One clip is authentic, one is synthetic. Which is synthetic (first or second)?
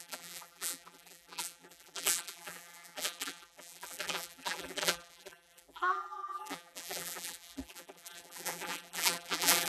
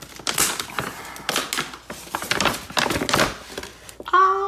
first